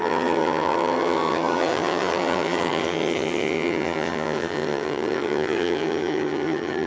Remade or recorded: remade